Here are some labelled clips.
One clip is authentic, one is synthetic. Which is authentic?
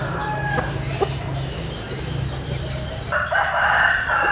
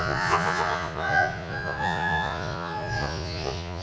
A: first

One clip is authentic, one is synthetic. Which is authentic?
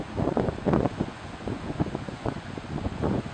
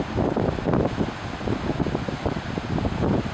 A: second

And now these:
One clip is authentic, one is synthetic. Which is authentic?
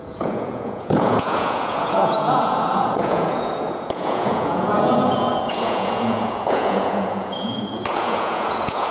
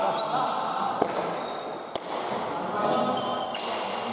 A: second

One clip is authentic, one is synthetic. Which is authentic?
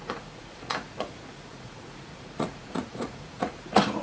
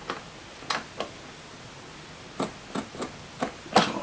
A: second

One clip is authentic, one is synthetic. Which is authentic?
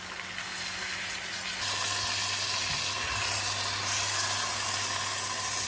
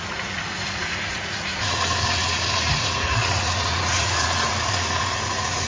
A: first